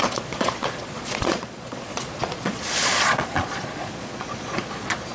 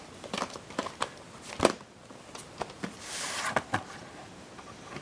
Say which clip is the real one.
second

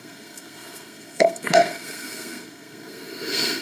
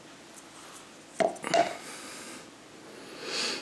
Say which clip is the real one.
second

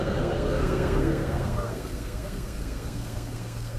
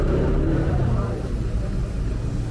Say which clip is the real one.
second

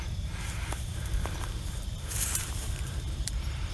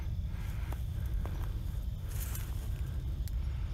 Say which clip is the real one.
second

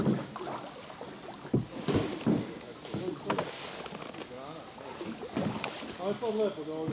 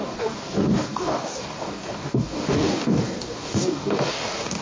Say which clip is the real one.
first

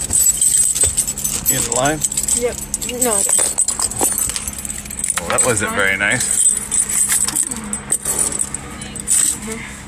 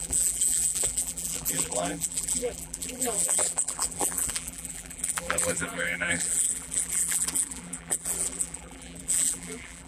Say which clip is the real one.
first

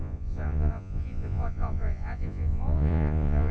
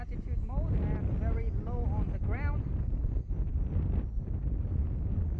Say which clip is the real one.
second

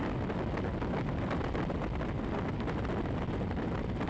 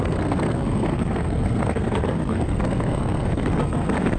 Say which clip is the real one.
first